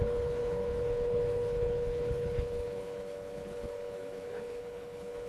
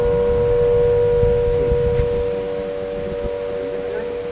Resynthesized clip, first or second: first